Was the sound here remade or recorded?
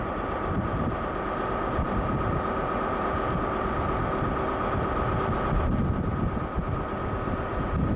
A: recorded